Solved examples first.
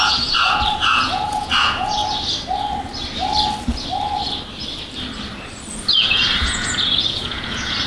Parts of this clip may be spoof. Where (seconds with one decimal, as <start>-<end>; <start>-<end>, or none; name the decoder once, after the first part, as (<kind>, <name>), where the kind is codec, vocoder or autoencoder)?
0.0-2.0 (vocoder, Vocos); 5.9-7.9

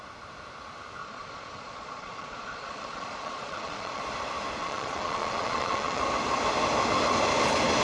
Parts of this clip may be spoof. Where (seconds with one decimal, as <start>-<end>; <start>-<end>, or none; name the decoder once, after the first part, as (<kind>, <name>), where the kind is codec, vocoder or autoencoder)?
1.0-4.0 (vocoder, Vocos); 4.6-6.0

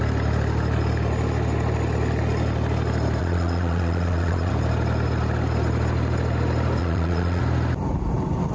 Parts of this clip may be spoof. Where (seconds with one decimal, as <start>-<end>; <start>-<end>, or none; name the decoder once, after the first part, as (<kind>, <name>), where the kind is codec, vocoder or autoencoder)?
3.2-4.5 (vocoder, Vocos); 6.8-7.4

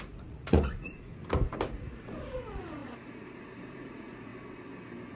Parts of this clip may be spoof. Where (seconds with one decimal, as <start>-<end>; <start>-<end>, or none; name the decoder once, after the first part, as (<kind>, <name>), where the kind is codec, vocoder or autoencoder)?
0.0-1.1 (vocoder, Vocos); 1.7-4.3